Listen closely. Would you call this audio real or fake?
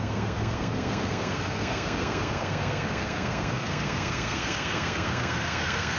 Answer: fake